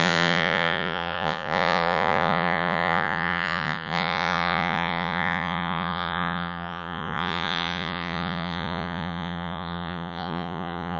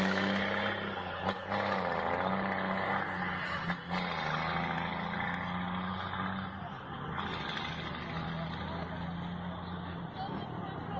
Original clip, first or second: second